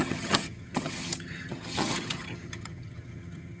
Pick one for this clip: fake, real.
fake